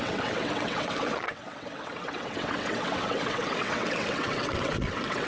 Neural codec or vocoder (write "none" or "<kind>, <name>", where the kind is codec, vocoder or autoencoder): vocoder, WaveNeXt